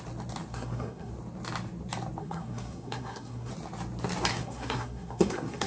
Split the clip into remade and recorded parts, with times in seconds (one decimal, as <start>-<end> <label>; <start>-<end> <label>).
0.0-0.5 recorded; 0.5-1.1 remade; 1.1-2.2 recorded; 2.2-3.5 remade; 3.5-4.3 recorded; 4.3-5.7 remade